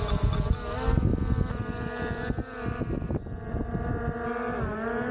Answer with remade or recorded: recorded